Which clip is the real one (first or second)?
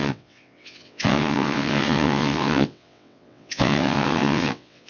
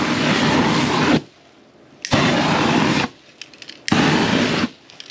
second